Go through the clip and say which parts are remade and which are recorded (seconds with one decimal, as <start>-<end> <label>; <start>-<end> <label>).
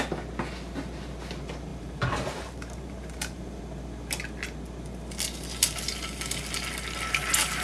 0.0-1.7 recorded; 1.7-3.6 remade; 3.6-7.6 recorded